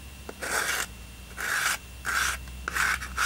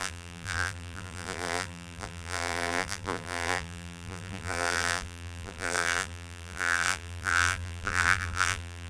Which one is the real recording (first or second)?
first